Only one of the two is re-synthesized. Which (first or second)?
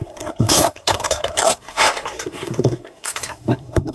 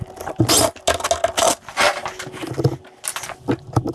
first